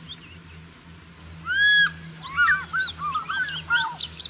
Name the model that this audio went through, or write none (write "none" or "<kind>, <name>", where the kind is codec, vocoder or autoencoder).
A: none